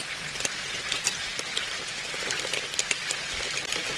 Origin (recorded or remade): recorded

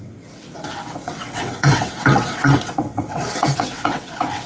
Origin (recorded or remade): remade